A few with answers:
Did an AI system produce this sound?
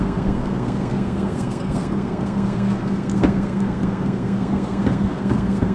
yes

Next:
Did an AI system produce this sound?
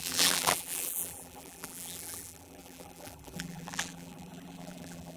yes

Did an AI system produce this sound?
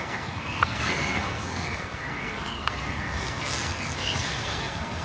yes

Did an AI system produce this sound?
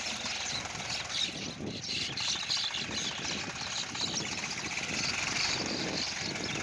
no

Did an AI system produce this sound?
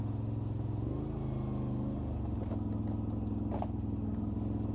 no